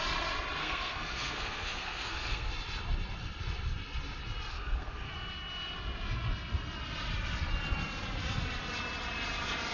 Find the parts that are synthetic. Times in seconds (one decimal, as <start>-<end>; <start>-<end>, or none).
0.6-2.5; 4.5-5.1